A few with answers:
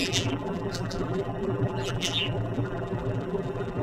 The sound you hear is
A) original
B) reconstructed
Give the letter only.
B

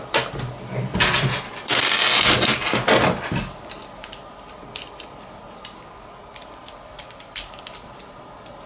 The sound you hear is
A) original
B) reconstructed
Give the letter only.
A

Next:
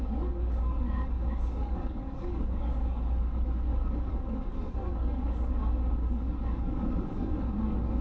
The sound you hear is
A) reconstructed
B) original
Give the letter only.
A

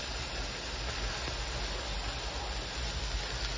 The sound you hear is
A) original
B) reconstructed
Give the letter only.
A